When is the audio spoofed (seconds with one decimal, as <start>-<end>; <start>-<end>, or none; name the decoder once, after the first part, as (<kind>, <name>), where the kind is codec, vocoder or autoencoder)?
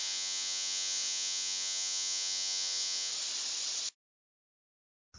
0.0-3.1 (vocoder, Vocos)